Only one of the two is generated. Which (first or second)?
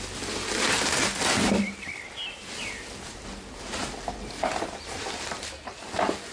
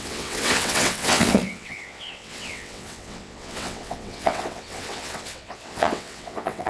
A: second